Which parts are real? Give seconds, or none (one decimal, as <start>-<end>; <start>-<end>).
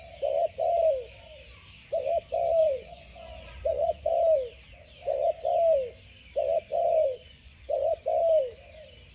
0.0-2.6; 4.1-6.7; 8.0-9.1